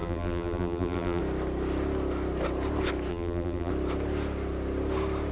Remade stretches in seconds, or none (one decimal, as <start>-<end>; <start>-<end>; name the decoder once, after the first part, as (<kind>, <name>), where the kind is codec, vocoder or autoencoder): 0.0-1.2 (vocoder, BigVGAN v2); 3.1-3.7